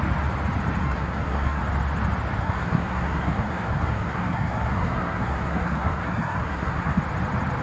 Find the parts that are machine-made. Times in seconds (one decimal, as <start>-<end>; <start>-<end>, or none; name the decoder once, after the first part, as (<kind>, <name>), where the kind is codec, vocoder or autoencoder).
0.8-1.6 (codec, SNAC); 2.4-7.0